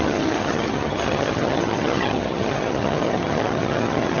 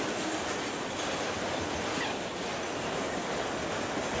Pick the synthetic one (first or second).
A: first